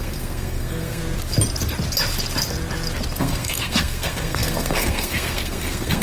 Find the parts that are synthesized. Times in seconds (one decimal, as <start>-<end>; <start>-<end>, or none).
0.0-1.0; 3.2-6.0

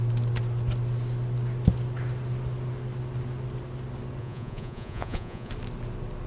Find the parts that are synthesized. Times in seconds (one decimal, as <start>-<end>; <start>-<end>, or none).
4.2-5.5

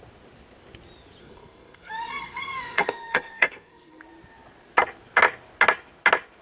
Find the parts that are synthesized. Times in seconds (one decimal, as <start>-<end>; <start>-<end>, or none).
1.2-4.0

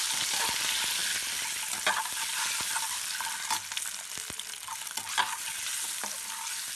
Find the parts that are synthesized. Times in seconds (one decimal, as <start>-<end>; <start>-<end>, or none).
none

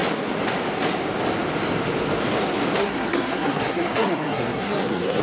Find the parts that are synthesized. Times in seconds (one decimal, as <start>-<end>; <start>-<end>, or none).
2.8-5.2

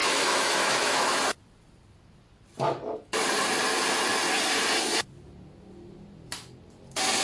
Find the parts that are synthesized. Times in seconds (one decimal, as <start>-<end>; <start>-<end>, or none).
0.0-1.2

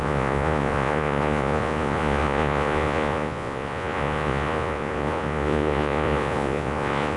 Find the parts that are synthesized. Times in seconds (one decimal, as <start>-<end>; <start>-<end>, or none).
0.0-7.2